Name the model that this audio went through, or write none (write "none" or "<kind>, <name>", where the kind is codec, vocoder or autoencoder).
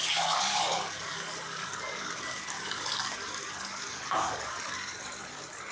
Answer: codec, DAC